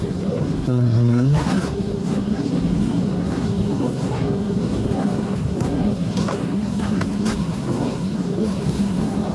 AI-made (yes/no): yes